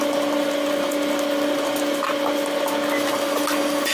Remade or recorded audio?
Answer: recorded